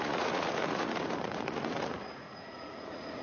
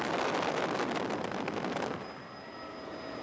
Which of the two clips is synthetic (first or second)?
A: first